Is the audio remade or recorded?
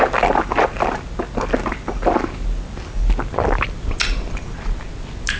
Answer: recorded